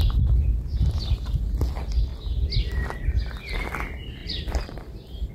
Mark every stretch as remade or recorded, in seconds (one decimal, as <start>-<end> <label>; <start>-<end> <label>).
0.0-4.2 recorded; 4.2-5.3 remade